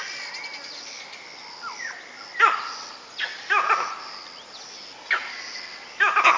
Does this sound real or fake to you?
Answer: real